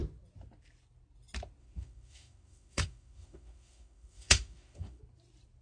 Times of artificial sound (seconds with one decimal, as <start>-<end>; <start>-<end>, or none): 1.6-5.0